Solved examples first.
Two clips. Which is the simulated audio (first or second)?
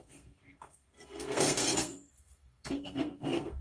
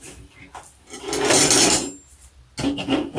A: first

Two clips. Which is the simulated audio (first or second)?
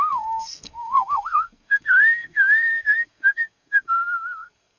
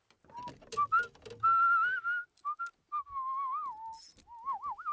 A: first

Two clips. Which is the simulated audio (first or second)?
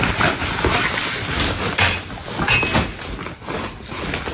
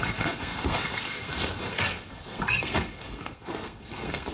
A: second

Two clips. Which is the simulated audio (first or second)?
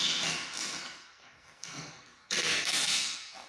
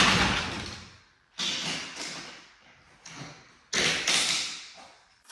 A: first